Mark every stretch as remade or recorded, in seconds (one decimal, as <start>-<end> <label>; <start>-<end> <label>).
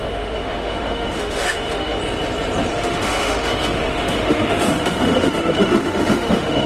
0.0-2.0 remade; 2.0-2.7 recorded; 2.7-6.7 remade